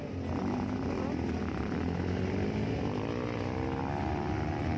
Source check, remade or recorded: recorded